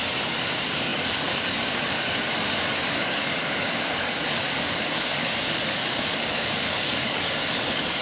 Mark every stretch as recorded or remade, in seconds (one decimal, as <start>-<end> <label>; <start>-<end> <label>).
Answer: 0.0-8.0 remade